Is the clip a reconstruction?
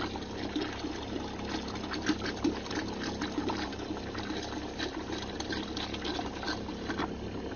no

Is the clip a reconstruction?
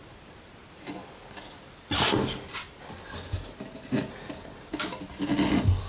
no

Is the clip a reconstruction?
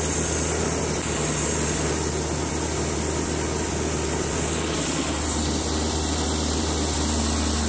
no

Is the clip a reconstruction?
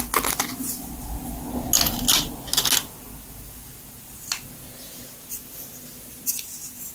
no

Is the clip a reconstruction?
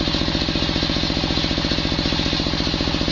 no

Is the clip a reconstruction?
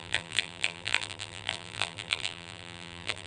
yes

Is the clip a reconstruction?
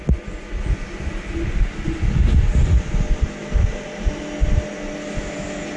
no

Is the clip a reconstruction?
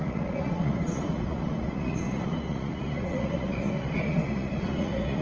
yes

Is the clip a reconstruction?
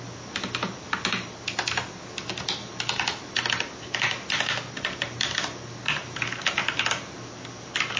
no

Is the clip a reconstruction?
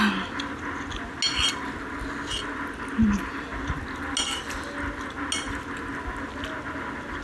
no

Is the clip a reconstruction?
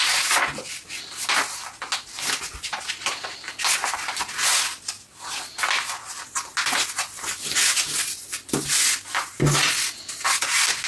no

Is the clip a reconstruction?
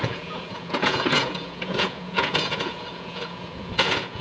yes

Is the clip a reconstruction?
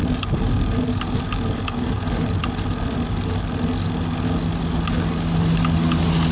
no